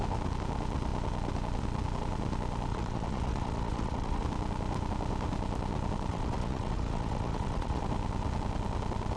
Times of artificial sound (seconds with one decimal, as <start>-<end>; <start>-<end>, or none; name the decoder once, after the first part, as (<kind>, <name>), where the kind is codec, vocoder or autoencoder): 2.7-4.2 (vocoder, Vocos); 6.1-7.8